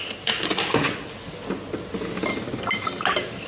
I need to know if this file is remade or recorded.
recorded